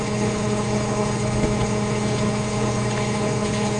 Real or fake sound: fake